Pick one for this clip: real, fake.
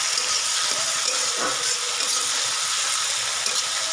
real